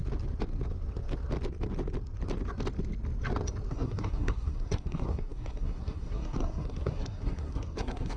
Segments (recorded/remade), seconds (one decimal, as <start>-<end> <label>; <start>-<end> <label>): 0.0-3.7 recorded; 3.7-8.2 remade